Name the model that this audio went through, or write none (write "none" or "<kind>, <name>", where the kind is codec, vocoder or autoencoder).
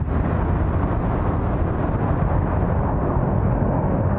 none